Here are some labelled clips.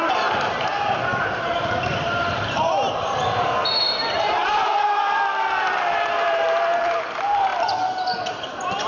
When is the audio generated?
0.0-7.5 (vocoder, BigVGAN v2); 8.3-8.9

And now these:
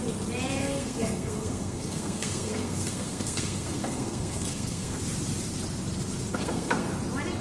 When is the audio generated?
0.6-5.0 (codec, SNAC); 6.3-6.9

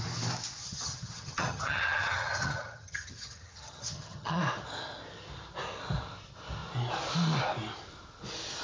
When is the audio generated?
0.6-4.4 (vocoder, HiFi-GAN)

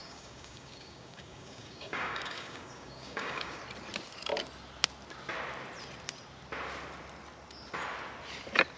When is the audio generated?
0.0-3.6 (codec, DAC)

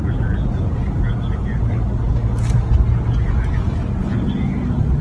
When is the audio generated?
none

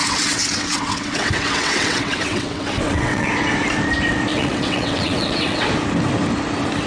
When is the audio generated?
0.0-3.3 (vocoder, WaveNeXt); 4.3-5.7